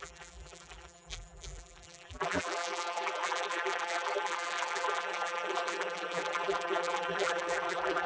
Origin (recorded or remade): remade